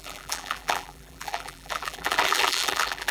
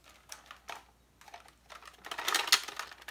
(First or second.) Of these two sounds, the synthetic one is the first